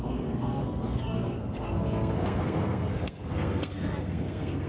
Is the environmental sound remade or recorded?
remade